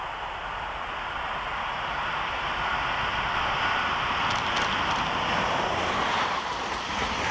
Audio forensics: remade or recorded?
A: recorded